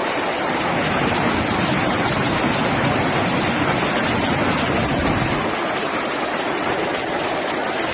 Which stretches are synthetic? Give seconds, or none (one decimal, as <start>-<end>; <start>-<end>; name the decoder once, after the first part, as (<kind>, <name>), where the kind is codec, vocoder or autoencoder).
none